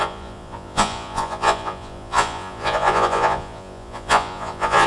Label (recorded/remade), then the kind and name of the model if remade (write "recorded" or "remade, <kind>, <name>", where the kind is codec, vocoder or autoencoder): remade, vocoder, Vocos